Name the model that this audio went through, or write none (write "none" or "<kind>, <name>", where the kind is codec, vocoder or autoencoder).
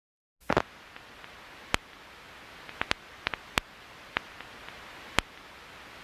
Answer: none